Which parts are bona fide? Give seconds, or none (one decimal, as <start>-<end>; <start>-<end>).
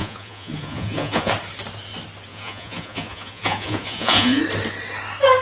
1.3-2.3; 4.4-5.4